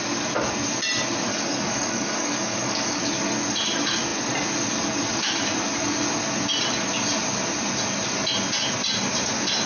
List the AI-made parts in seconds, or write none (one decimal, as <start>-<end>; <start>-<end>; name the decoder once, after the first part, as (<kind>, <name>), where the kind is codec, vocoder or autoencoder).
1.3-3.0 (codec, DAC)